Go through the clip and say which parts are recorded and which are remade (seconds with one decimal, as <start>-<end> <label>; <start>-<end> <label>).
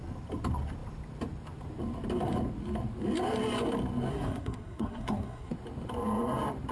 0.0-4.1 recorded; 4.1-5.5 remade; 5.5-6.7 recorded